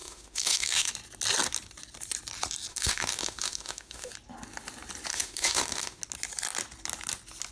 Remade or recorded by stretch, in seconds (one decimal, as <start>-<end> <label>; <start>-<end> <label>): 0.0-0.9 remade; 0.9-2.7 recorded; 2.7-4.1 remade; 4.1-5.1 recorded; 5.1-6.0 remade; 6.0-7.5 recorded